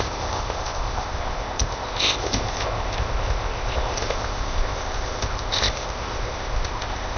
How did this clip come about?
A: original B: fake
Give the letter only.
B